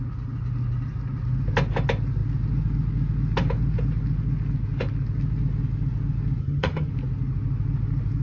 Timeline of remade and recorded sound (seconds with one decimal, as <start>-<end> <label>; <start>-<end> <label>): 0.0-6.4 recorded; 6.4-6.9 remade; 6.9-8.2 recorded